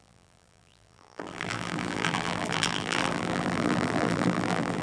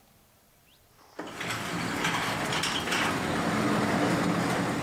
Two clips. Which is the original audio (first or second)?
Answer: second